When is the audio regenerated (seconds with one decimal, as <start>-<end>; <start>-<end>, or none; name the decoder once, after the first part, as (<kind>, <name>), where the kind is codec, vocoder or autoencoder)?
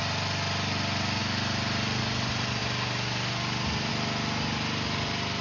none